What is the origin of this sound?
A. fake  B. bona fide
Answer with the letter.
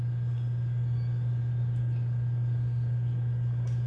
B